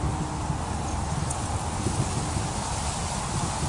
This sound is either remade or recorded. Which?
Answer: recorded